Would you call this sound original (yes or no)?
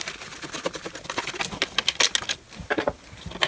yes